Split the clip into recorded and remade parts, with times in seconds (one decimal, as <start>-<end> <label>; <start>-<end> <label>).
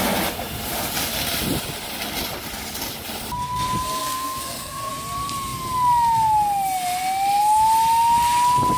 0.0-4.0 recorded; 4.0-4.9 remade; 4.9-8.8 recorded